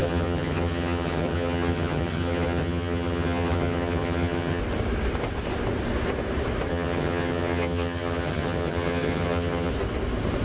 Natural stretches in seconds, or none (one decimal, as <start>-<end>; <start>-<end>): 4.6-6.7; 9.7-10.4